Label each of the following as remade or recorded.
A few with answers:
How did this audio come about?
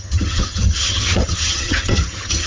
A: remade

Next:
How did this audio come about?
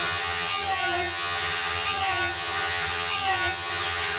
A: remade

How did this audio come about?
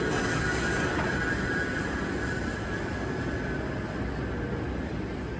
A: recorded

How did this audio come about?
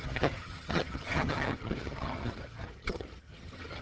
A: remade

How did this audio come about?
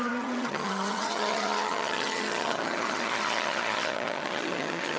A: remade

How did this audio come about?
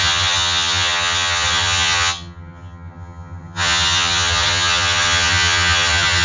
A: remade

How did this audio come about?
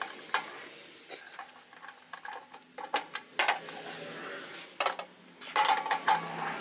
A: recorded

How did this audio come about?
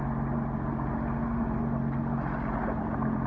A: recorded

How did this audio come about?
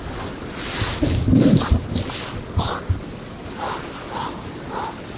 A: recorded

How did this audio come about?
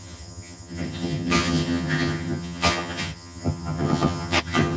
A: remade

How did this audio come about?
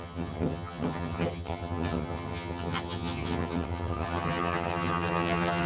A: remade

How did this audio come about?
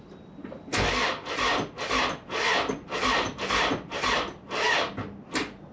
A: recorded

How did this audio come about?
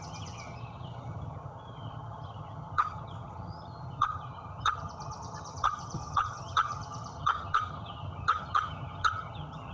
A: remade